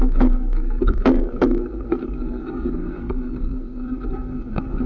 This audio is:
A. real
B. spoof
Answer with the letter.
B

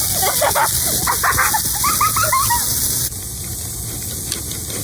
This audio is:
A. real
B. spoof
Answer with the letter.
A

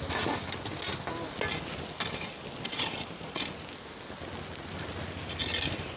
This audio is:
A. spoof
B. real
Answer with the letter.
B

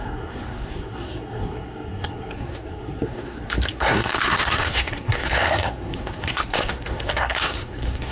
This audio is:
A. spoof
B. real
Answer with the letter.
A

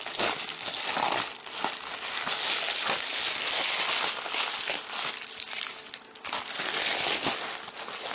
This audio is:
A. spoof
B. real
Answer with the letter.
B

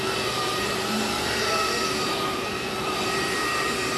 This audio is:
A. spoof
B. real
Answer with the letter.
A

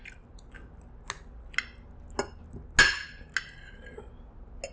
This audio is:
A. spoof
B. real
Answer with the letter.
B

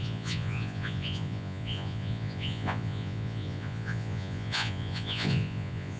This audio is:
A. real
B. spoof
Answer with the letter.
B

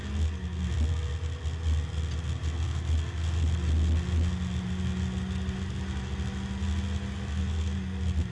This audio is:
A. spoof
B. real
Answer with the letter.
B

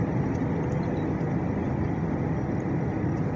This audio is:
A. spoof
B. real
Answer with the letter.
B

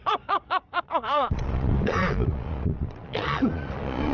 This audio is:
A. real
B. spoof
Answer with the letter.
B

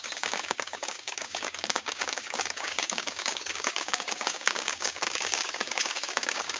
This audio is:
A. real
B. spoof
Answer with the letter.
B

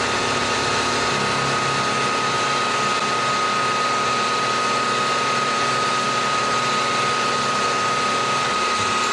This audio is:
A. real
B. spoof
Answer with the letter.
A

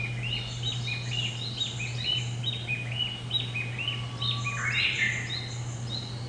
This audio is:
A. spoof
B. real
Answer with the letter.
B